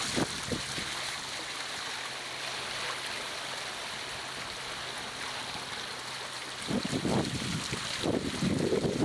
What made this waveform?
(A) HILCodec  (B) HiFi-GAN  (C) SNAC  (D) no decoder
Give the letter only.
D